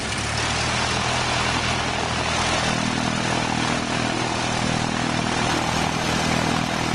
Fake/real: real